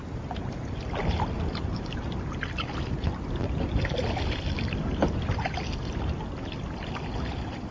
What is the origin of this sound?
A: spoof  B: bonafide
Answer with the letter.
B